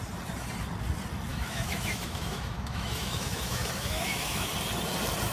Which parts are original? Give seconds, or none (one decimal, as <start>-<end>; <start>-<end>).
0.0-1.3; 4.5-5.3

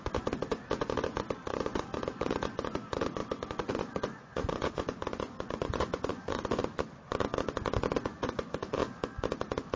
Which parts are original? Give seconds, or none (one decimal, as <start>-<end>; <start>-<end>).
6.6-8.0; 8.8-9.8